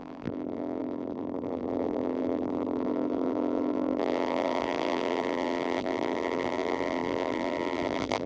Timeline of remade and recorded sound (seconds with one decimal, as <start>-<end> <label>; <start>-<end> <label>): 0.0-8.3 remade